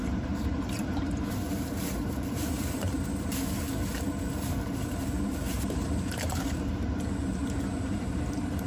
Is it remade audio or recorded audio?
remade